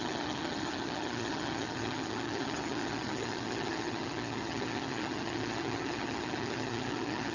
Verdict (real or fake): fake